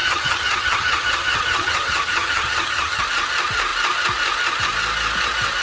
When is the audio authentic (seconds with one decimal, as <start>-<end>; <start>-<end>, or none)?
3.0-5.6